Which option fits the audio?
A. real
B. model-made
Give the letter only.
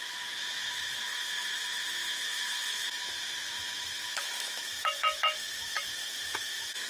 B